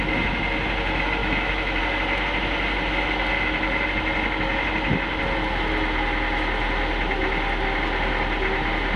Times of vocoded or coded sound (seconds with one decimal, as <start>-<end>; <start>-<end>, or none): 1.2-1.8